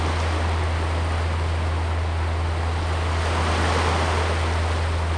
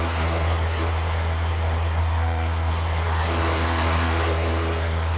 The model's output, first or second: second